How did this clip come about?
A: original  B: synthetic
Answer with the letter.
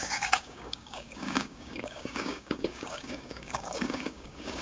B